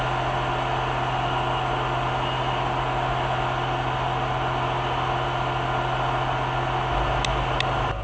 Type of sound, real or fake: real